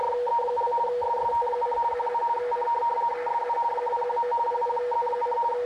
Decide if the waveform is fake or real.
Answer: real